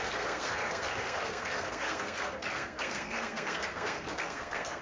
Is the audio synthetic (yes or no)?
yes